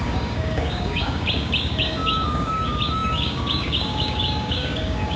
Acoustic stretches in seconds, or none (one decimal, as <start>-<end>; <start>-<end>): none